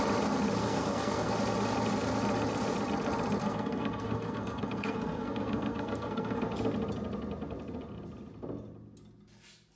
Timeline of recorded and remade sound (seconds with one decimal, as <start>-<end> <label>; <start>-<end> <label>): 0.0-0.6 recorded; 0.6-1.3 remade; 1.3-3.4 recorded; 3.4-6.4 remade; 6.4-9.8 recorded